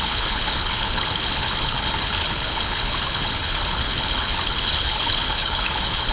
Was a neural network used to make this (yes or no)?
yes